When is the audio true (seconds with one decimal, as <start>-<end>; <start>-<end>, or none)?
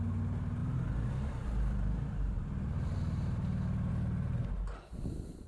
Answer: 0.0-0.6; 3.9-5.5